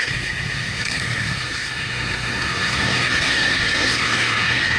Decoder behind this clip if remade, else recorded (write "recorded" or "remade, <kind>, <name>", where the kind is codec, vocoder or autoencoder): remade, codec, SNAC